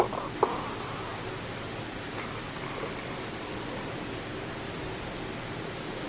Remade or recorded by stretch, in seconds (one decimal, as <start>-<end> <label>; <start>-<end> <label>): 0.0-6.1 recorded